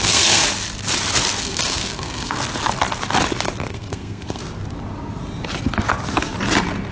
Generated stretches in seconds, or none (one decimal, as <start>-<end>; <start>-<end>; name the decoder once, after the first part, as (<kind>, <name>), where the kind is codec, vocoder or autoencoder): 0.0-0.4 (codec, SNAC); 1.4-2.4; 3.7-4.4